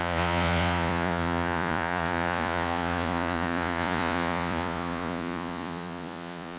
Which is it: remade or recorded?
remade